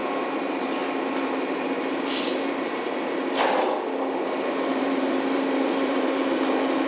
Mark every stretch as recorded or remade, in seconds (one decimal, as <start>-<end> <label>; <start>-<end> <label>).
0.0-2.9 remade; 2.9-4.7 recorded; 4.7-6.5 remade; 6.5-6.9 recorded